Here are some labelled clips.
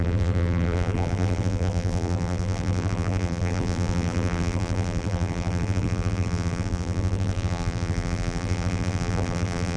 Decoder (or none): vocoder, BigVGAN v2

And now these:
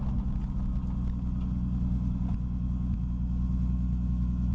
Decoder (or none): none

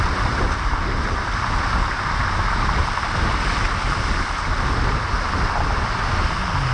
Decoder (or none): none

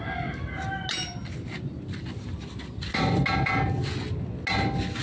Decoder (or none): none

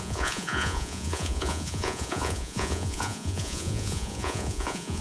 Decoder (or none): vocoder, Vocos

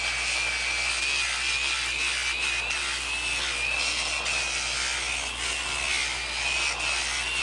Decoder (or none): none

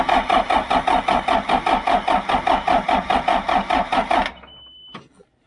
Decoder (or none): none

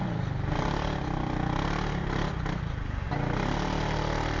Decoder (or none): none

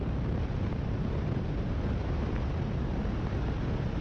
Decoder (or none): none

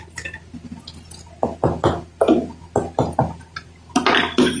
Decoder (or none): none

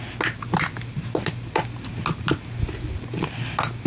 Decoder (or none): none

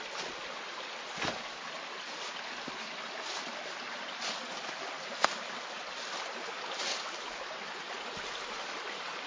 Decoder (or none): none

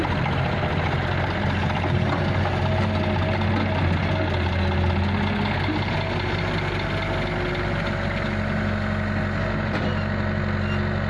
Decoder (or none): none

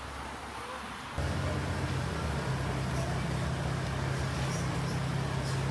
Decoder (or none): none